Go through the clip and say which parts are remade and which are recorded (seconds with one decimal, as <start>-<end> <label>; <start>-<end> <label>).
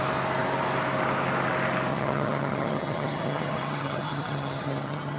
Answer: 0.0-1.9 recorded; 1.9-5.2 remade